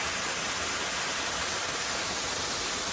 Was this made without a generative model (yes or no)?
yes